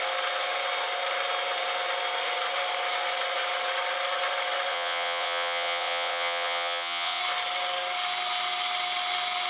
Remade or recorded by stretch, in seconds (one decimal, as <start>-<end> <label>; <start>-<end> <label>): 0.0-4.7 recorded; 4.7-7.2 remade; 7.2-9.5 recorded

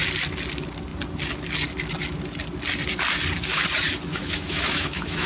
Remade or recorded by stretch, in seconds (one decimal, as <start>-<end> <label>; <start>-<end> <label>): 0.0-4.1 recorded; 4.1-5.3 remade

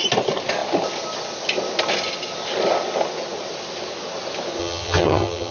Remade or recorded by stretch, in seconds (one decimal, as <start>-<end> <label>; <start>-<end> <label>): 0.0-4.6 recorded; 4.6-5.5 remade

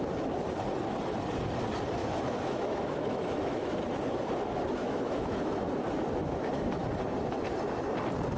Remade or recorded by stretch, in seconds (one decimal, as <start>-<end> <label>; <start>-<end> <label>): 0.0-2.0 recorded; 2.0-3.7 remade; 3.7-4.8 recorded; 4.8-5.6 remade; 5.6-6.2 recorded; 6.2-6.7 remade; 6.7-8.4 recorded

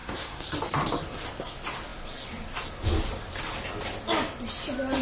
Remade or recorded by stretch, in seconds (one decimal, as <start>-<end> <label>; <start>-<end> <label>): 0.0-0.5 remade; 0.5-5.0 recorded

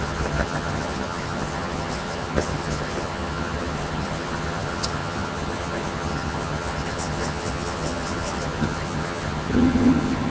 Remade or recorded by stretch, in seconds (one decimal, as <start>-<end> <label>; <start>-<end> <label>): 0.0-10.3 remade